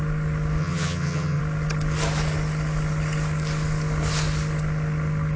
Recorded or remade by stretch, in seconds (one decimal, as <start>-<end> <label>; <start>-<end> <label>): 0.0-0.6 recorded; 0.6-1.4 remade; 1.4-5.4 recorded